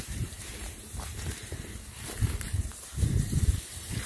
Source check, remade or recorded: remade